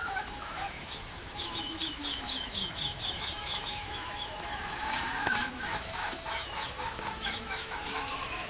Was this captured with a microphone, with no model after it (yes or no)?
no